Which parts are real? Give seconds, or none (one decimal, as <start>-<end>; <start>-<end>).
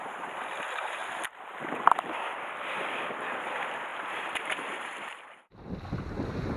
0.0-3.9; 5.7-6.6